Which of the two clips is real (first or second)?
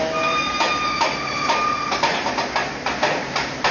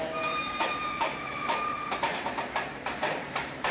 first